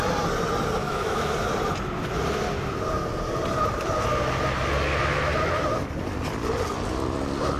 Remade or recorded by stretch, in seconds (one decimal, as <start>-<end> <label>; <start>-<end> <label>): 0.0-0.8 recorded; 0.8-1.3 remade; 1.3-7.6 recorded